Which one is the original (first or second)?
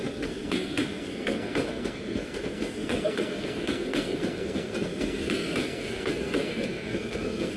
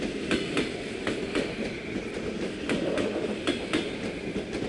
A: second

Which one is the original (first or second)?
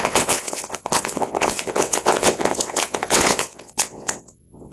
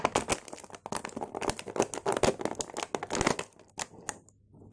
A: second